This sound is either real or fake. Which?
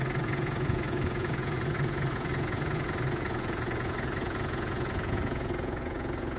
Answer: fake